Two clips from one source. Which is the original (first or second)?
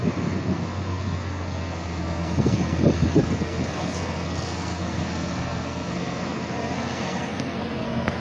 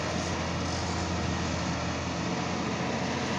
second